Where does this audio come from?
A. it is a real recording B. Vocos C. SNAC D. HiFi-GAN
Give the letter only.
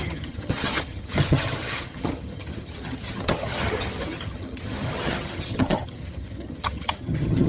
D